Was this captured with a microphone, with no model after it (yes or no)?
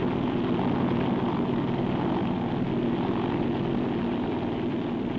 yes